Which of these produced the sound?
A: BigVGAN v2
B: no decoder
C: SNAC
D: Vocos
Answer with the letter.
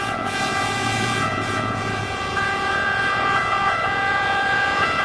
D